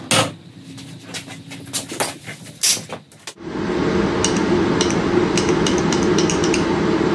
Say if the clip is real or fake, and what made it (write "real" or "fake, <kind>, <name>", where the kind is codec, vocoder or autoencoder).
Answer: real